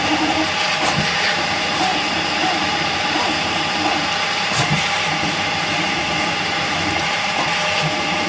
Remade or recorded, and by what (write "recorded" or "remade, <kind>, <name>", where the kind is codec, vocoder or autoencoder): remade, vocoder, BigVGAN v2